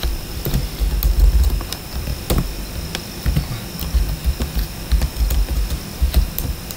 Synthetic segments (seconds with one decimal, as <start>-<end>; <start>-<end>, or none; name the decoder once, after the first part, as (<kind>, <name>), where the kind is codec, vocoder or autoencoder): 0.0-0.6 (vocoder, BigVGAN v2); 1.6-2.1; 6.0-6.8